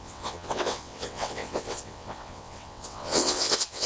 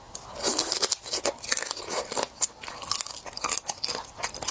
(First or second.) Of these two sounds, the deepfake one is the first